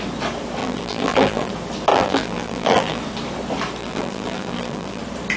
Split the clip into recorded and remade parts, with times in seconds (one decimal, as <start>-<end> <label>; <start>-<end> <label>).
0.0-0.6 recorded; 0.6-1.5 remade; 1.5-1.9 recorded; 1.9-3.0 remade; 3.0-3.8 recorded; 3.8-5.0 remade; 5.0-5.4 recorded